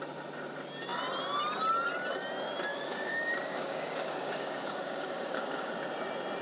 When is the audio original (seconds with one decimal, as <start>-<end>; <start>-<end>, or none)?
0.0-2.7; 5.7-6.4